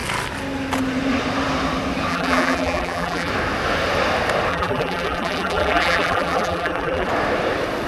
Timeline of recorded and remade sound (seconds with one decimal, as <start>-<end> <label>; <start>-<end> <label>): 0.0-2.1 recorded; 2.1-3.3 remade; 3.3-4.5 recorded; 4.5-7.1 remade; 7.1-7.9 recorded